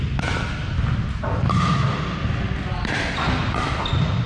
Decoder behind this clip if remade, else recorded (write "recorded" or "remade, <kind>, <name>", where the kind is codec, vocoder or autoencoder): recorded